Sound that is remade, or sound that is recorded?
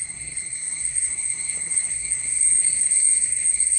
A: remade